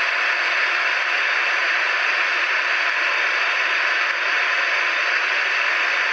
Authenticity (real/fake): real